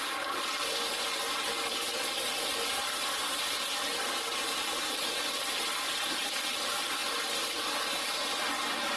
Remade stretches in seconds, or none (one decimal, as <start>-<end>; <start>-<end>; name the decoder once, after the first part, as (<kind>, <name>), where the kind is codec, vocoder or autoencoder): none